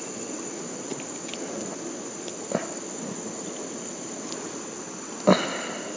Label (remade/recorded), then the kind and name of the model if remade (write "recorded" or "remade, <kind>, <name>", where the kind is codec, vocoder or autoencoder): recorded